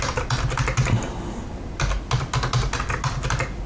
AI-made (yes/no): no